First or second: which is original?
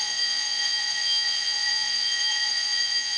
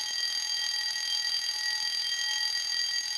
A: second